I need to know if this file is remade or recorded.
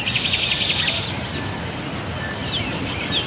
recorded